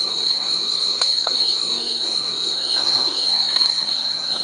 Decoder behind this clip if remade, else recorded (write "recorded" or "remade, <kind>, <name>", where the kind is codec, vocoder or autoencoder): remade, codec, SNAC